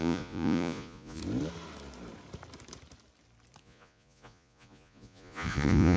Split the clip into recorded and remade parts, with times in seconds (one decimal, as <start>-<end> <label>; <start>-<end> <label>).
0.0-1.2 remade; 1.2-3.6 recorded; 3.6-6.0 remade

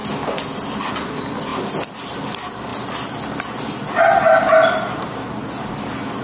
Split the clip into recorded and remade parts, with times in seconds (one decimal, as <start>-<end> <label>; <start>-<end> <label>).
0.0-6.2 recorded

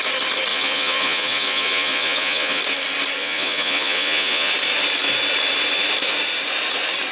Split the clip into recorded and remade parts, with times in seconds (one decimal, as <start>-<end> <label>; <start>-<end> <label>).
0.0-0.5 recorded; 0.5-2.6 remade; 2.6-3.2 recorded; 3.2-4.5 remade; 4.5-7.1 recorded